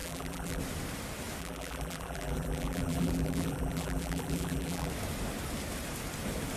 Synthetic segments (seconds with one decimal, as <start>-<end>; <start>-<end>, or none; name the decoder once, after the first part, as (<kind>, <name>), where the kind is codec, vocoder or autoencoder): 0.0-0.6 (vocoder, BigVGAN v2); 1.4-4.9